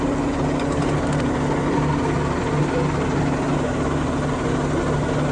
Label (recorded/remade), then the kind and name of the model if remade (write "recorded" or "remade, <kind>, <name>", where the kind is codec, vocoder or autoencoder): recorded